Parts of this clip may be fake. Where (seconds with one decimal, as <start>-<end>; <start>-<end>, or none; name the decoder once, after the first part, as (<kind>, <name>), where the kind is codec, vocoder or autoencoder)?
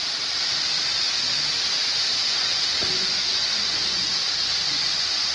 1.8-5.3 (vocoder, Vocos)